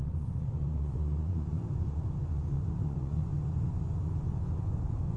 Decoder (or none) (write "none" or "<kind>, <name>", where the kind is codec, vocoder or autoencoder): vocoder, Vocos